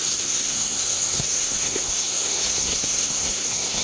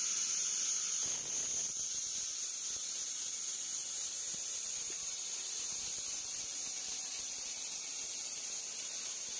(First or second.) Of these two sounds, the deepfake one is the first